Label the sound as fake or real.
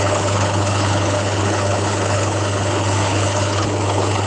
fake